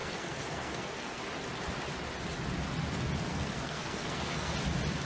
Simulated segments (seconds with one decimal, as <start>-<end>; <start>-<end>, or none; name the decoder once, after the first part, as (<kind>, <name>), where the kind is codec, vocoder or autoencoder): 0.0-1.2 (codec, SNAC); 3.3-4.5